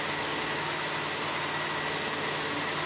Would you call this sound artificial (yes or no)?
no